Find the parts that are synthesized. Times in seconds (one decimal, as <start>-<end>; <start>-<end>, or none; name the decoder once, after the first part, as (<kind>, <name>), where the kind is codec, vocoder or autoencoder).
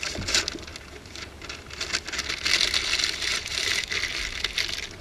3.3-3.9 (vocoder, BigVGAN v2)